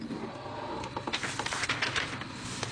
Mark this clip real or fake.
real